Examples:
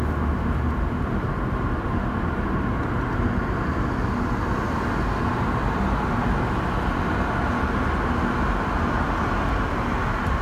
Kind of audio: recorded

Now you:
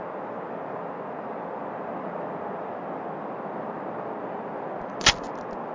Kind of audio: recorded